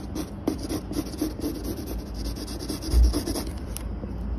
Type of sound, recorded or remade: recorded